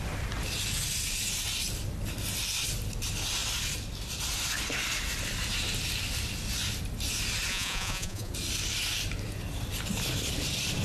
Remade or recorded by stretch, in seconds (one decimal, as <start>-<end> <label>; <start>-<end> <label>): 0.0-7.5 recorded; 7.5-8.3 remade; 8.3-10.8 recorded